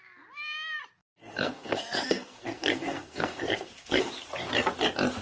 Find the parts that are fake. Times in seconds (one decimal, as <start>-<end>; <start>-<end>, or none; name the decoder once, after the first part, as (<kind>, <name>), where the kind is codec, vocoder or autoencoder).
1.0-4.1 (codec, SNAC)